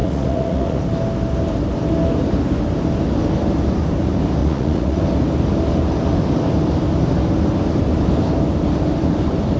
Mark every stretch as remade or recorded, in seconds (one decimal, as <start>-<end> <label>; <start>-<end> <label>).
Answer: 0.0-0.8 remade; 0.8-4.4 recorded; 4.4-5.0 remade; 5.0-9.6 recorded